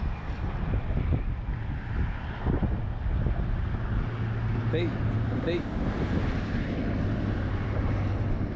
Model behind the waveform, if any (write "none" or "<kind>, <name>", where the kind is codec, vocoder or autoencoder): none